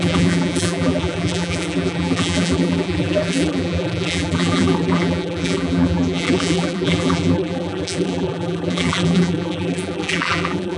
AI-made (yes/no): yes